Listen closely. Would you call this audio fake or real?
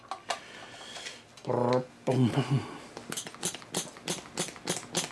real